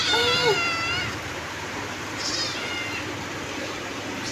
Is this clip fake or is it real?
real